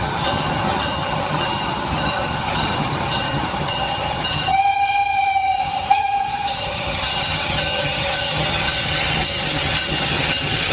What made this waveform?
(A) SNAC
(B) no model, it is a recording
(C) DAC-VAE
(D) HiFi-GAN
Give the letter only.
D